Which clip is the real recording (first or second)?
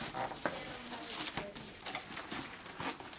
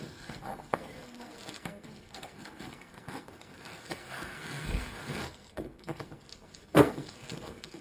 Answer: first